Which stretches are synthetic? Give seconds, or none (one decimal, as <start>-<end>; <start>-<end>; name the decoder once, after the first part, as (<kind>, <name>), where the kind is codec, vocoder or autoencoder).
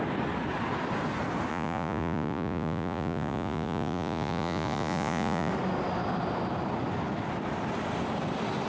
1.5-5.5 (vocoder, Vocos)